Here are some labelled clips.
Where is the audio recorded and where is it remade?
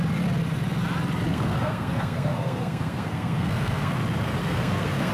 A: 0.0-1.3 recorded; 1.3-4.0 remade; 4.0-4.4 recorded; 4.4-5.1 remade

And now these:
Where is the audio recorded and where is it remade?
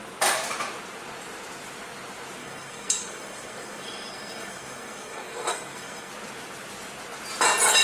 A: 0.0-2.4 recorded; 2.4-6.1 remade; 6.1-7.8 recorded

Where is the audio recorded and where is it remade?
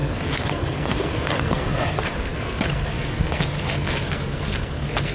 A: 0.0-5.1 remade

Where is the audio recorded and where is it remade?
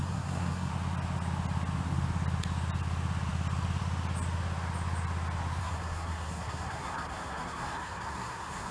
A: 0.0-0.7 remade; 0.7-5.6 recorded; 5.6-8.7 remade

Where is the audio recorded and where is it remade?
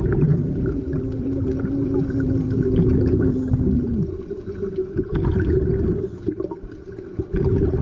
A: 0.0-7.8 recorded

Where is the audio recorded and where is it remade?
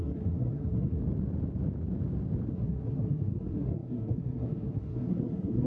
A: 0.0-1.0 remade; 1.0-2.5 recorded; 2.5-5.7 remade